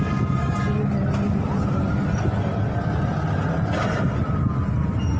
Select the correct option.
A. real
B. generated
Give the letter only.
A